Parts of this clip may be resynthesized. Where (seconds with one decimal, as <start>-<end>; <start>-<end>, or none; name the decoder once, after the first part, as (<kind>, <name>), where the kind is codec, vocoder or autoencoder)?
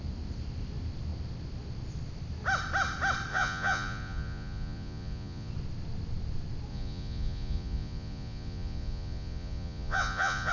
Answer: 3.3-5.5 (vocoder, Vocos); 6.7-10.5